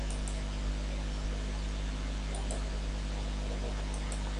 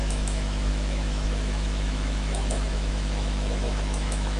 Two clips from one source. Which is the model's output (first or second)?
second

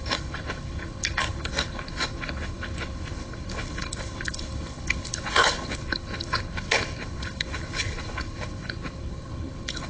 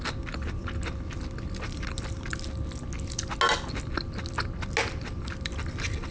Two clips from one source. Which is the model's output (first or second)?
first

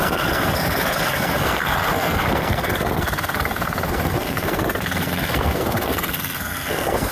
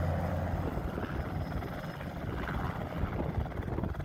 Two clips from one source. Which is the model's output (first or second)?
first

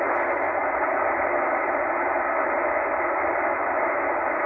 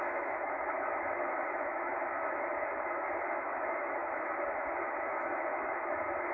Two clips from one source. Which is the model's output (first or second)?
second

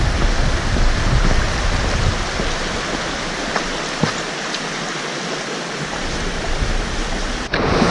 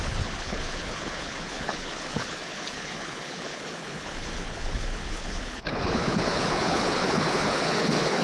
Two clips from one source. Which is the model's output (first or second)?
second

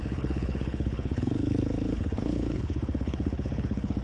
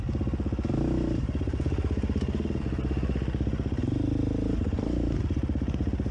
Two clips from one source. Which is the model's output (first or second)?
first